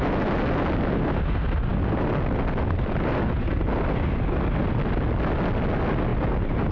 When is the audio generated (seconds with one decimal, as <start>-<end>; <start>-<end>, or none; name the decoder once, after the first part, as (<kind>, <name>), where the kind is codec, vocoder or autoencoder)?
none